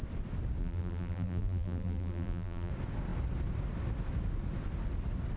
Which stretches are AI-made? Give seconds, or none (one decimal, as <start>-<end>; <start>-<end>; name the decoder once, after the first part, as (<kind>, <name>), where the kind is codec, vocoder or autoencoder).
0.6-2.7 (vocoder, BigVGAN v2)